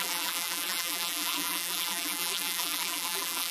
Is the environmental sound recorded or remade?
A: remade